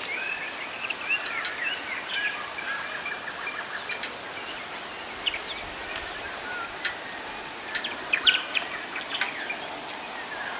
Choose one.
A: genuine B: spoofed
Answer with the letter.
A